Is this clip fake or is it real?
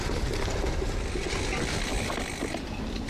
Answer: real